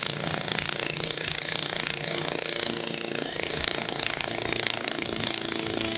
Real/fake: fake